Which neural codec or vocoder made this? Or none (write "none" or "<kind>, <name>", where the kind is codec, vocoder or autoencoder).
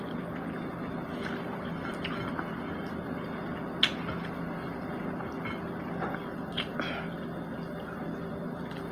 none